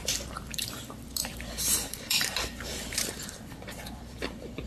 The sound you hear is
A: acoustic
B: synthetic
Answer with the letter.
B